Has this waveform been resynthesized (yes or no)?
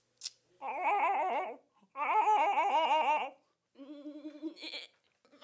no